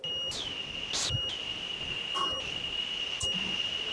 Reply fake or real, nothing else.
real